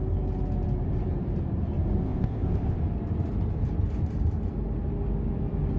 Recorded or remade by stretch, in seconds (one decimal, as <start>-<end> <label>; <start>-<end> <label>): 0.0-2.0 recorded; 2.0-2.8 remade; 2.8-5.8 recorded